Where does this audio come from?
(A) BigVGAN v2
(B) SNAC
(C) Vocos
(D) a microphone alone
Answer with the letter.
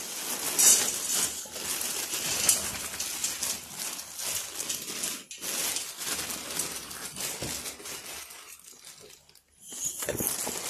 D